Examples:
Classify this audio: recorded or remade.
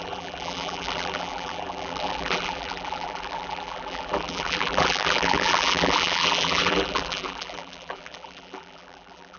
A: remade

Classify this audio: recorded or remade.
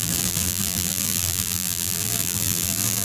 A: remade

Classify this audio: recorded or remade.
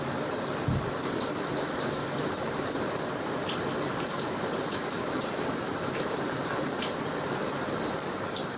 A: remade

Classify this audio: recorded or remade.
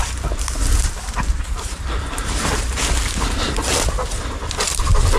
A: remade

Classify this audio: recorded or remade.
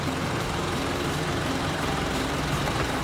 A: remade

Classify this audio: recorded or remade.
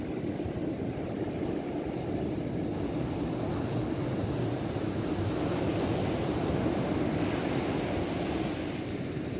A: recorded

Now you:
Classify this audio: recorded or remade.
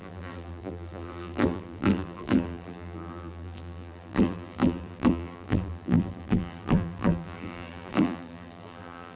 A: remade